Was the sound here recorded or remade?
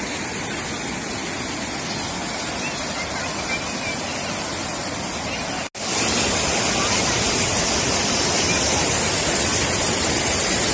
recorded